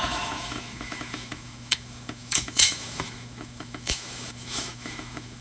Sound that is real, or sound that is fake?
fake